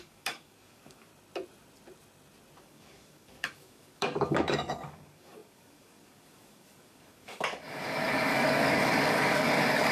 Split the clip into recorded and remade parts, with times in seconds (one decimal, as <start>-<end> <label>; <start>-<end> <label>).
0.0-1.1 remade; 1.1-2.6 recorded; 2.6-9.9 remade